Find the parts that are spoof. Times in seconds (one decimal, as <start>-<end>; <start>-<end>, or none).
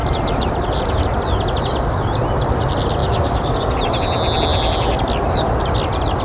0.0-0.8; 3.0-3.6